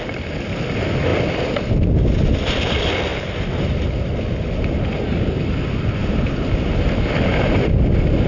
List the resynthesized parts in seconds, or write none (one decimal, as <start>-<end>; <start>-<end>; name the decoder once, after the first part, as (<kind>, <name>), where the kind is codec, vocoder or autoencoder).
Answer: none

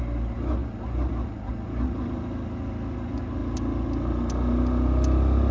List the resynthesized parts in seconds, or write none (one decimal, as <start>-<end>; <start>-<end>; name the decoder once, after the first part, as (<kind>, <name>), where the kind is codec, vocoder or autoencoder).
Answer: none

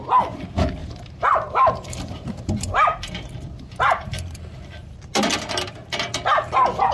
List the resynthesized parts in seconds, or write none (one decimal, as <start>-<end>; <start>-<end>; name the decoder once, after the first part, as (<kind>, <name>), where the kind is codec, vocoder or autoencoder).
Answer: 0.8-4.9 (vocoder, BigVGAN v2)

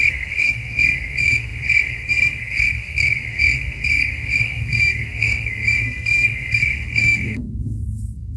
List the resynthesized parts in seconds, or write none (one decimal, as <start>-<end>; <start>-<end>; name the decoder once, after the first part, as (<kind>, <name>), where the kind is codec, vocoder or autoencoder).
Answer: 0.0-8.4 (codec, SNAC)

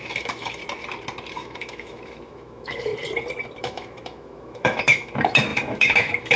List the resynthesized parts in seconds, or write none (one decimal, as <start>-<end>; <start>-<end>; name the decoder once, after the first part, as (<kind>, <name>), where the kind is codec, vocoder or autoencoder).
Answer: 0.0-0.6 (autoencoder, DAC-VAE); 1.3-2.9; 3.6-6.4

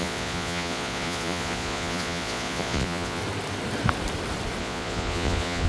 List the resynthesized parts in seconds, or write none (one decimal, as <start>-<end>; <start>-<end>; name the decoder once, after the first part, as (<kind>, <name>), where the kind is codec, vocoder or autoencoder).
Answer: 0.0-3.2 (vocoder, Vocos); 4.6-5.7

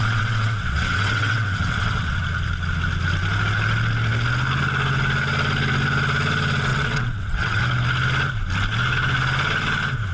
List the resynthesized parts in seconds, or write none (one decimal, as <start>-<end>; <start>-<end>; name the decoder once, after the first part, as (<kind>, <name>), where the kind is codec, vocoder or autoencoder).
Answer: 0.0-2.2 (vocoder, WaveNeXt); 6.7-7.6

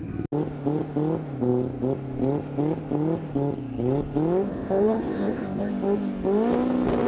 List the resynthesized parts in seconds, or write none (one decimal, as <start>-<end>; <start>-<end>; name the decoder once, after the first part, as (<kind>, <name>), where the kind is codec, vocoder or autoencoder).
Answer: 4.5-5.7 (codec, ZipCodec)